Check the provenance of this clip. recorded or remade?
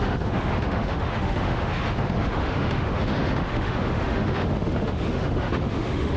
remade